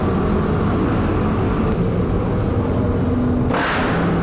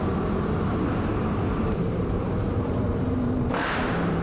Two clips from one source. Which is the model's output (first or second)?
second